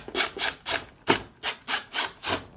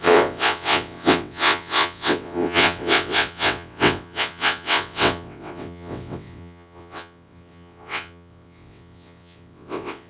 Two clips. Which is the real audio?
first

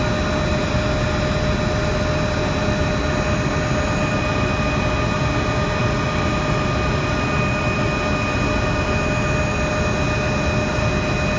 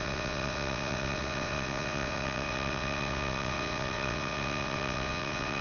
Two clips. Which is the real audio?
first